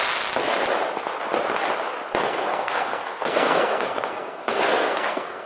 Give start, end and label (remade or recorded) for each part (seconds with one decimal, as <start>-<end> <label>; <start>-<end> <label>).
0.0-2.2 recorded; 2.2-5.5 remade